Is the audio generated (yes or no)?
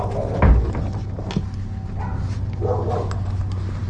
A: no